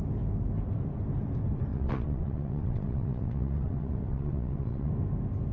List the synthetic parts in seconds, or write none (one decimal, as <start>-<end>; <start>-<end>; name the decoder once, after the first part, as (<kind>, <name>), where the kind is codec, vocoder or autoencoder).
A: 1.7-4.9 (vocoder, WaveNeXt)